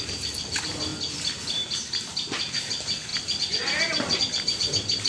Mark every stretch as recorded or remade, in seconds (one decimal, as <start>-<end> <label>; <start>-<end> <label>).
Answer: 0.0-3.1 recorded; 3.1-4.2 remade; 4.2-5.1 recorded